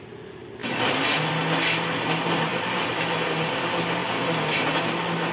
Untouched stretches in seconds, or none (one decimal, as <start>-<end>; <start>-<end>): 0.0-0.6; 1.3-2.5; 3.6-4.0; 4.8-5.3